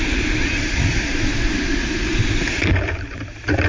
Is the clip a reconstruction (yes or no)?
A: no